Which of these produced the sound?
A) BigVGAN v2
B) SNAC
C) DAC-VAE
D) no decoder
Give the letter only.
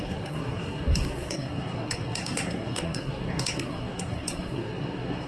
B